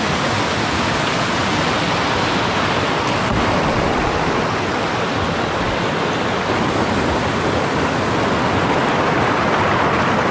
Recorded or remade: recorded